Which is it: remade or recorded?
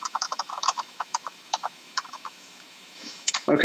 remade